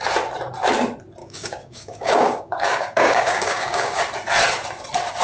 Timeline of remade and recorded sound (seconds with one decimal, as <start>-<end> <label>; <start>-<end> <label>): 0.0-1.2 recorded; 1.2-4.0 remade; 4.0-5.2 recorded